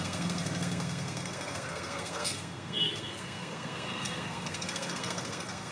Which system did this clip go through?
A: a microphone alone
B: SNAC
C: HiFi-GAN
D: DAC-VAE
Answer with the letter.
B